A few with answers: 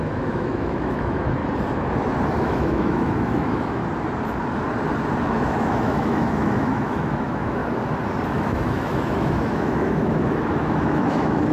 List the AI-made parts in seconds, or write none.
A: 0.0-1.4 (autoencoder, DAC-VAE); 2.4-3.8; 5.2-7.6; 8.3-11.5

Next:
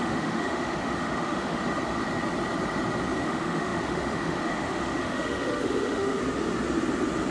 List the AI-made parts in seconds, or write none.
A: 0.0-1.6 (autoencoder, DAC-VAE); 3.2-6.2

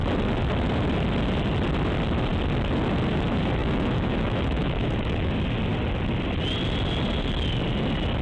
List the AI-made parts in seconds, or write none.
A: 3.6-5.3 (autoencoder, DAC-VAE)